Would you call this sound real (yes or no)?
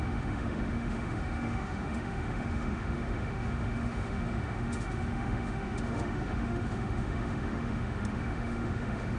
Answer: no